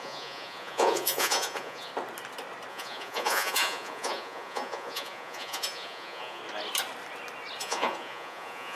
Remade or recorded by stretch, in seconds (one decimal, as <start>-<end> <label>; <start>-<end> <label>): 0.0-1.9 remade; 1.9-2.7 recorded; 2.7-6.4 remade; 6.4-7.6 recorded; 7.6-8.8 remade